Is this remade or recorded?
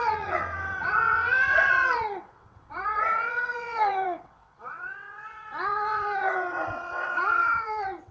remade